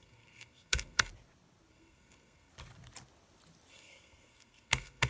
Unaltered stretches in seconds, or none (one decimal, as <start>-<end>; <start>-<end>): 1.1-1.7; 2.5-3.7